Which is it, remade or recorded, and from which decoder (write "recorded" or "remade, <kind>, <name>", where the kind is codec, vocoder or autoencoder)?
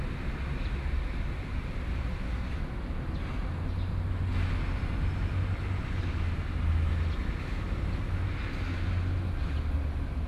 recorded